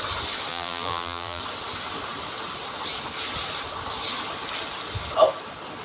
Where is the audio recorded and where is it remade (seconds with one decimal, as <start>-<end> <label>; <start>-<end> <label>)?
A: 0.0-0.5 recorded; 0.5-1.4 remade; 1.4-5.8 recorded